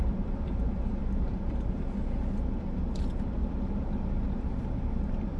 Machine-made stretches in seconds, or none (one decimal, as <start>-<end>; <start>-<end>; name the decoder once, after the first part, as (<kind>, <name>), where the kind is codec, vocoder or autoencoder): 0.0-5.4 (vocoder, BigVGAN v2)